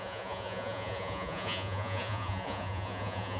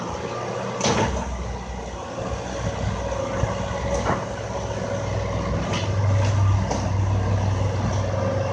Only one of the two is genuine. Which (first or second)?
second